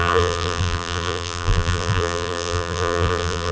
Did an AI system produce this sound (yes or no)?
yes